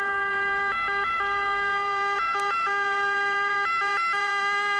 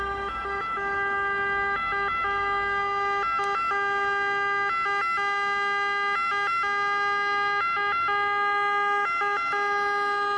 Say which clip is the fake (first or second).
first